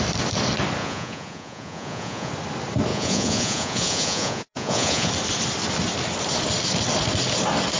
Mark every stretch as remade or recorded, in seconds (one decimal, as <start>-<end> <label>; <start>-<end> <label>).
0.0-0.8 recorded; 0.8-2.3 remade; 2.3-2.9 recorded; 2.9-5.1 remade; 5.1-7.8 recorded